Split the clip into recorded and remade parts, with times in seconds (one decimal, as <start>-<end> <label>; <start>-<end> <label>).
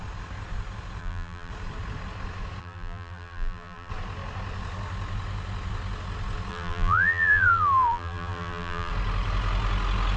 0.0-1.0 recorded; 1.0-1.5 remade; 1.5-2.6 recorded; 2.6-3.9 remade; 3.9-6.5 recorded; 6.5-8.9 remade; 8.9-10.2 recorded